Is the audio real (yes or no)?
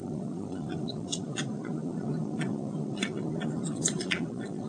no